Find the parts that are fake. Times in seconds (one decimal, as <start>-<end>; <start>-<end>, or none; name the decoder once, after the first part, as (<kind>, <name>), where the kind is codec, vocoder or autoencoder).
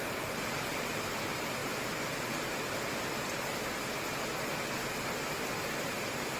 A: none